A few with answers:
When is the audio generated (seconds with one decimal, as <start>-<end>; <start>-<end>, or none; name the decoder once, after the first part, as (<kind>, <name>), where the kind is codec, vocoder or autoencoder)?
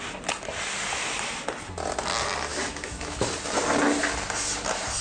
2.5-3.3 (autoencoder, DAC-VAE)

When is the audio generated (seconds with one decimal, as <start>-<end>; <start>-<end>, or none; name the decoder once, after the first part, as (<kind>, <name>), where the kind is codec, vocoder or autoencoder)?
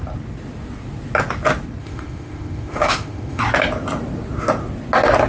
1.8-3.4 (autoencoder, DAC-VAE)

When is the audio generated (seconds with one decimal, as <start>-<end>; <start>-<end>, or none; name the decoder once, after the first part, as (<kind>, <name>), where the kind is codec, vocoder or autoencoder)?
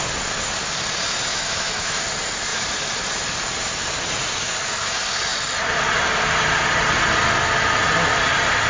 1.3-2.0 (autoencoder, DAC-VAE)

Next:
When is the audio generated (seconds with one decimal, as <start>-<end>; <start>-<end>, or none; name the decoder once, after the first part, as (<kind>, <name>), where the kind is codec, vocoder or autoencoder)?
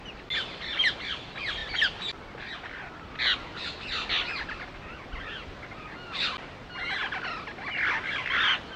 none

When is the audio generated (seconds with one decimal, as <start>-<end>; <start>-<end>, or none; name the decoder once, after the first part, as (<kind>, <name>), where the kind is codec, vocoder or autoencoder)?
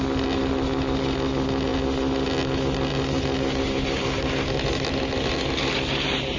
none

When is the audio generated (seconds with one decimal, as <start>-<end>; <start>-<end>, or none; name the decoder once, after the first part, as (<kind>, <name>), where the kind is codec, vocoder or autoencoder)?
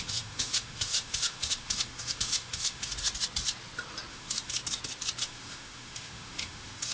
0.0-2.9 (autoencoder, DAC-VAE); 4.1-4.6; 5.2-6.9